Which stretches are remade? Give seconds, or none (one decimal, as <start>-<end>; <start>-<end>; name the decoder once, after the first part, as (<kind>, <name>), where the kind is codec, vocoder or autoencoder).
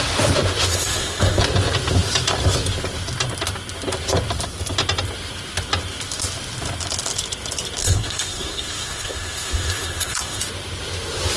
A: 0.7-1.4 (codec, SNAC); 7.8-10.4